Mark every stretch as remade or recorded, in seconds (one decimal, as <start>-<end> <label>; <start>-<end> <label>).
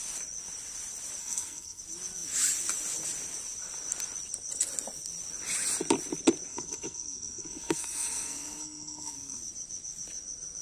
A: 0.0-1.2 recorded; 1.2-1.8 remade; 1.8-6.5 recorded; 6.5-9.4 remade; 9.4-10.6 recorded